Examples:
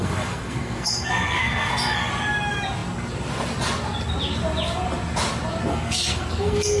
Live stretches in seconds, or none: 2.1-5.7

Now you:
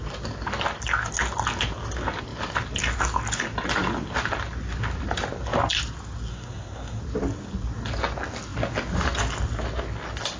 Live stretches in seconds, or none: 0.0-6.3; 7.0-10.4

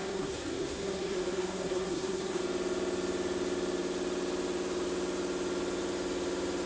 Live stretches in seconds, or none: 2.4-6.7

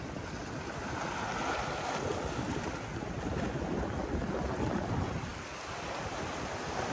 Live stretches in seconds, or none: 0.0-6.9

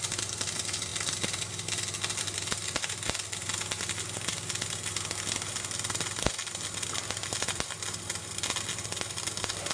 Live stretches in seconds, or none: 0.0-9.7

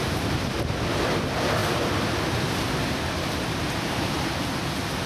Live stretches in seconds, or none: 0.0-5.1

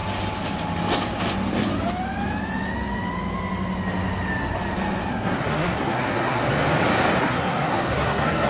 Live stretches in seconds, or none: 0.0-5.1; 6.4-7.2